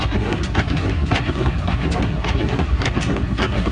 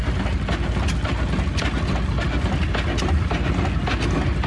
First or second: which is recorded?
second